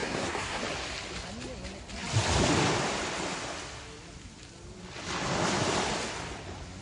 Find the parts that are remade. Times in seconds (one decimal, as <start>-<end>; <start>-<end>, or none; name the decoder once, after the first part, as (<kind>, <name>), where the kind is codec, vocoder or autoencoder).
0.0-0.6 (codec, SNAC)